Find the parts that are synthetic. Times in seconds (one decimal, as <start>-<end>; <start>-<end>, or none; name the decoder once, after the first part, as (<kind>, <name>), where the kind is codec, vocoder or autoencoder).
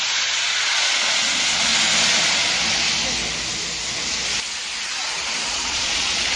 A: 0.0-1.7 (vocoder, Vocos); 5.5-6.4